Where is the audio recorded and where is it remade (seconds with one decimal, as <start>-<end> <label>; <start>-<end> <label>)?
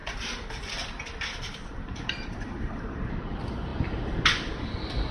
0.0-3.1 remade; 3.1-5.1 recorded